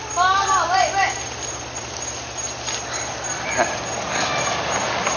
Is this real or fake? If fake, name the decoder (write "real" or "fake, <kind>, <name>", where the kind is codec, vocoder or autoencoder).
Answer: real